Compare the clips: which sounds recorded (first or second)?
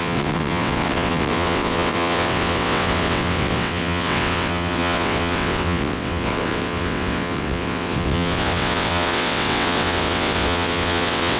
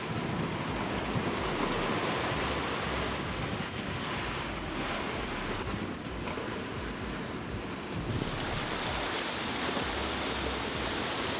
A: second